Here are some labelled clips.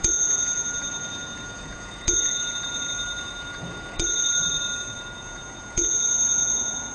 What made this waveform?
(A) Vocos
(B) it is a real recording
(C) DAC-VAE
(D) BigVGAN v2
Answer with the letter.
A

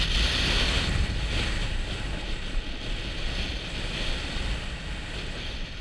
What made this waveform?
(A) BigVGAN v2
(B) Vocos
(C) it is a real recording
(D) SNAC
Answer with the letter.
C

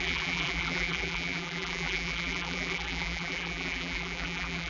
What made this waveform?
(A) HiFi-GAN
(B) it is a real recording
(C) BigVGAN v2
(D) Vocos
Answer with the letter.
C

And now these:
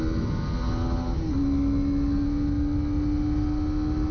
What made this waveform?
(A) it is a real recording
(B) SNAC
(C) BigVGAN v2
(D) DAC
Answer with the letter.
A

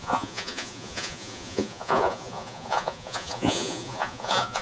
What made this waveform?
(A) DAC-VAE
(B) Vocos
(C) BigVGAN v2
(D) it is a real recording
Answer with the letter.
B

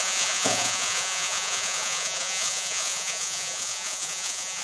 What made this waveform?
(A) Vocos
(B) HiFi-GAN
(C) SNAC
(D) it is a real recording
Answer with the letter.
A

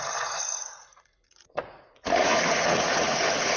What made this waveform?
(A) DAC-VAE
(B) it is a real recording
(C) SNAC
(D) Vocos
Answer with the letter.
D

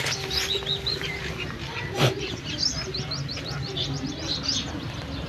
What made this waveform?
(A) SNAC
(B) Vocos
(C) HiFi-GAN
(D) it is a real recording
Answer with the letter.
D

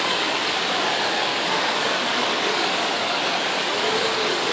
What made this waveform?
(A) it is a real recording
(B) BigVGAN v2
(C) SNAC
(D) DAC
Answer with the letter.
D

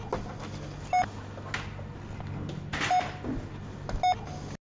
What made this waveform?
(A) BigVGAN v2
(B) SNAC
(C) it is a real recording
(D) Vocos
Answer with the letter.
C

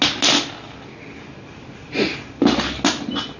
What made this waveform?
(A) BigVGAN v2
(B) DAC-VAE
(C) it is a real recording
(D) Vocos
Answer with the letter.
C